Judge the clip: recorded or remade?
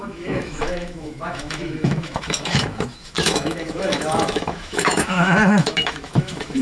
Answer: remade